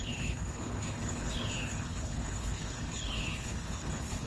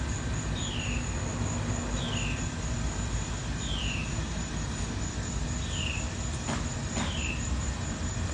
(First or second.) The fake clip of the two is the first